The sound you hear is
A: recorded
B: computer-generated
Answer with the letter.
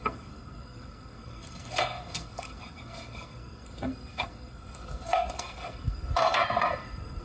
B